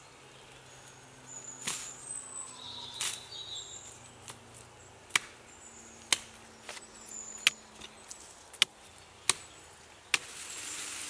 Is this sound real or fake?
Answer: real